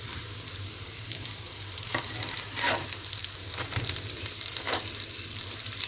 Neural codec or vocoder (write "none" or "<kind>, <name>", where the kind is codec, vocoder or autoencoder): vocoder, BigVGAN v2